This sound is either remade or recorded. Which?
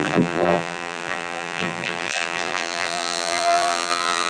remade